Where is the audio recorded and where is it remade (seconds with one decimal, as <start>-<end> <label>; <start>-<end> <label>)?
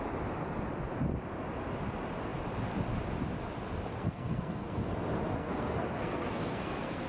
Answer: 0.0-3.9 recorded; 3.9-4.9 remade; 4.9-5.4 recorded; 5.4-7.1 remade